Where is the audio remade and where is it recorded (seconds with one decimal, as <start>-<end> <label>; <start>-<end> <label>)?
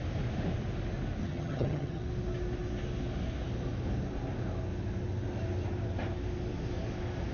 0.0-1.2 recorded; 1.2-2.0 remade; 2.0-7.3 recorded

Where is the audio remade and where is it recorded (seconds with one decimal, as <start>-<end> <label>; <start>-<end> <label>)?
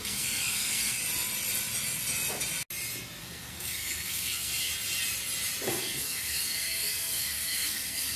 0.0-1.0 remade; 1.0-3.2 recorded; 3.2-4.7 remade; 4.7-5.7 recorded; 5.7-8.2 remade